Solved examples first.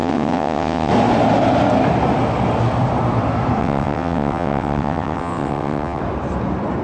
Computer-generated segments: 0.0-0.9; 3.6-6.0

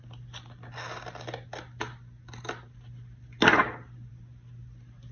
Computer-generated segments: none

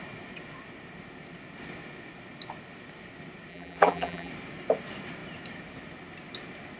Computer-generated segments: 3.5-4.3

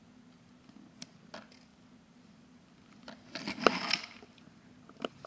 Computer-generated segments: none

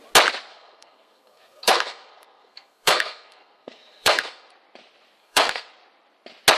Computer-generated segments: 0.5-4.5; 5.2-5.7

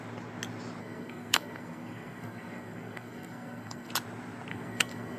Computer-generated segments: 0.8-3.9; 4.5-5.2

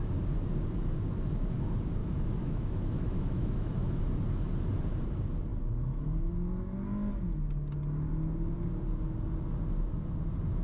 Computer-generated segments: 2.0-4.0